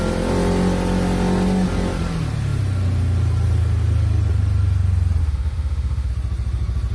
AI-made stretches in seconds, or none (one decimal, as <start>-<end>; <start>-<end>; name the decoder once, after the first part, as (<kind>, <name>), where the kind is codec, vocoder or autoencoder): 5.2-6.1 (autoencoder, DAC-VAE)